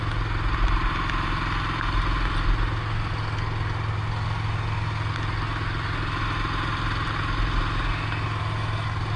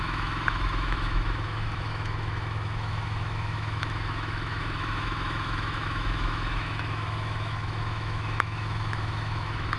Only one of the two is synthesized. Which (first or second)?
second